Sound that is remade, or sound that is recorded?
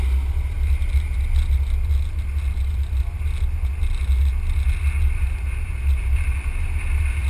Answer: recorded